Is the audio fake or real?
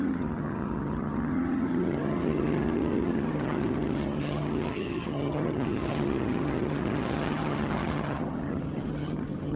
fake